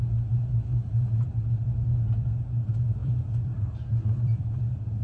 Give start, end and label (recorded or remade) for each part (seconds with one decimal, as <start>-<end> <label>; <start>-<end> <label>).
0.0-3.0 recorded; 3.0-4.6 remade; 4.6-5.0 recorded